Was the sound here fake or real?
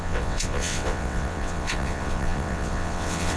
fake